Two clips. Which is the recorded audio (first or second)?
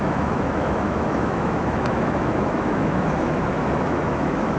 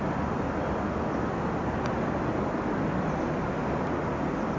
second